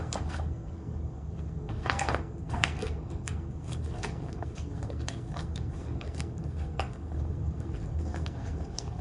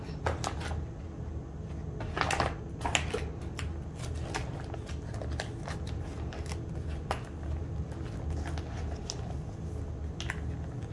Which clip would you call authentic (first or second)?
second